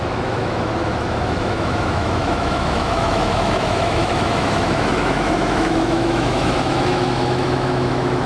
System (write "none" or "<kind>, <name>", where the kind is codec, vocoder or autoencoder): autoencoder, DAC-VAE